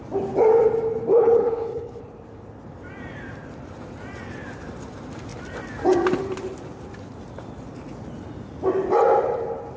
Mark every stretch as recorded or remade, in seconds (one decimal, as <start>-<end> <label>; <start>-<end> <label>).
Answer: 0.0-1.1 recorded; 1.1-2.0 remade; 2.0-9.8 recorded